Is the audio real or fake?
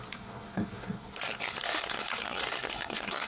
fake